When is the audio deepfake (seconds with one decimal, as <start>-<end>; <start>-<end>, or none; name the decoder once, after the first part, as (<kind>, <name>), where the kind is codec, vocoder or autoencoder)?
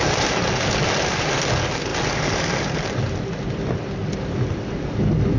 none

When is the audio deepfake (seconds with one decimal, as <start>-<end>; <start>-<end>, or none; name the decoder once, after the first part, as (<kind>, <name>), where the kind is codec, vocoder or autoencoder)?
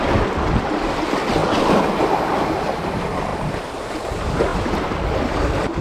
none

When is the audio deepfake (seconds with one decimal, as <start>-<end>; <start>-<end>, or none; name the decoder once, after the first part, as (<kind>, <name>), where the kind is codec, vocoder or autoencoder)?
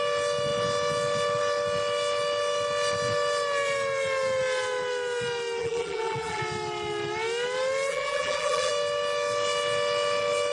5.6-6.4 (vocoder, BigVGAN v2); 7.9-8.7